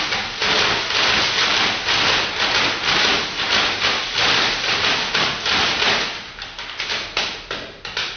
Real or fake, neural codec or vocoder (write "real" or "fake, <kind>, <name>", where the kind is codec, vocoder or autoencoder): real